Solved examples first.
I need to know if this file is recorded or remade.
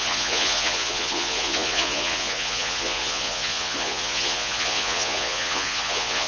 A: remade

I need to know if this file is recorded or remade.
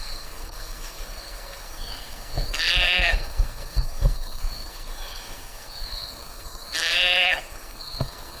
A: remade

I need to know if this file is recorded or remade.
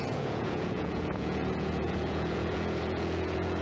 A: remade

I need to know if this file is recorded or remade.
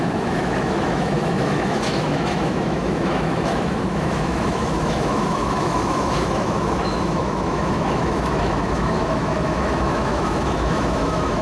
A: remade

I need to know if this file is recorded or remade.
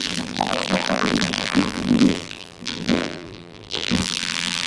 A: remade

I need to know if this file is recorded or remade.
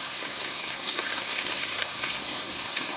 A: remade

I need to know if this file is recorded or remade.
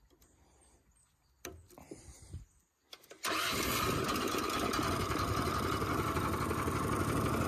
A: recorded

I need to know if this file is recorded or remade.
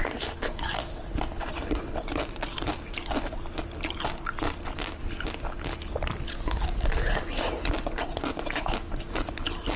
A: recorded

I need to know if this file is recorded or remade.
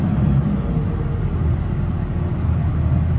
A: recorded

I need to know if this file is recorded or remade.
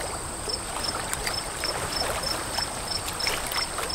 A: recorded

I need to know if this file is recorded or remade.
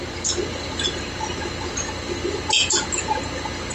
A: recorded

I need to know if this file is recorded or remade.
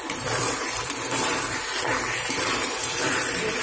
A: remade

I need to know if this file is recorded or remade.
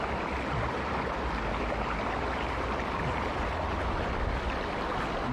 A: recorded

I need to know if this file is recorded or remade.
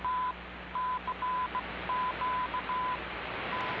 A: recorded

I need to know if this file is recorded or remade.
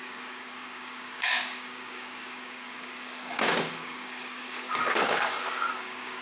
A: remade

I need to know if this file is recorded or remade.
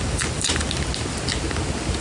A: recorded